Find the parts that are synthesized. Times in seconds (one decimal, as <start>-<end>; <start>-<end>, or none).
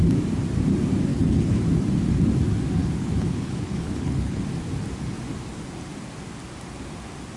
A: 1.1-1.6; 2.8-4.4